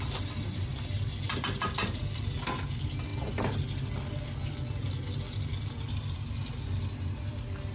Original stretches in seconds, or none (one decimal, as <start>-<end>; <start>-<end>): 0.0-7.7